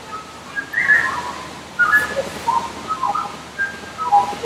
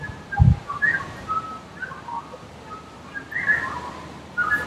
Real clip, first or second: first